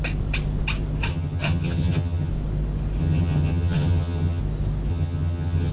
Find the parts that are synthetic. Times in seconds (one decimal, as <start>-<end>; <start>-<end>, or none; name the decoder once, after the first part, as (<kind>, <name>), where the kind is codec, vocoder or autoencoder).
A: 1.1-2.3 (vocoder, HiFi-GAN); 3.0-4.4; 4.9-5.7